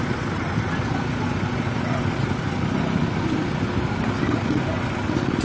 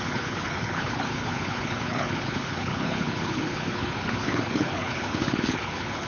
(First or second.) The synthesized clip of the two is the second